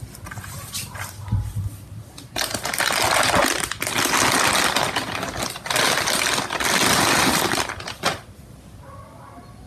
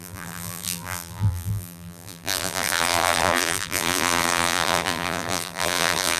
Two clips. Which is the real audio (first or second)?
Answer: first